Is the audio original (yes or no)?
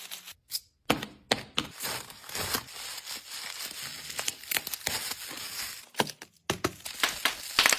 yes